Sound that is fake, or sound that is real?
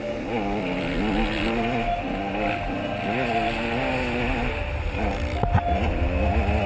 real